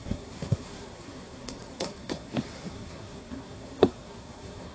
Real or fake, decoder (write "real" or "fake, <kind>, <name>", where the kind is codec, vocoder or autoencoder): fake, codec, SNAC